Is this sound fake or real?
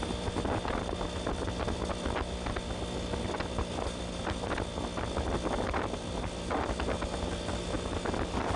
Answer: real